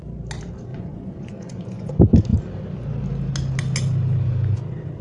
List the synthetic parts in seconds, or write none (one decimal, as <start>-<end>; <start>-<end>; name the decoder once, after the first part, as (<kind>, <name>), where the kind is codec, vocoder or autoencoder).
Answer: 0.7-1.9 (vocoder, Vocos)